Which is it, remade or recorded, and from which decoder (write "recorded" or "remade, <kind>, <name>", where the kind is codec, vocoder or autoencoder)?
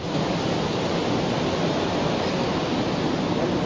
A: recorded